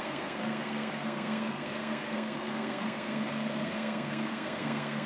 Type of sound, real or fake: fake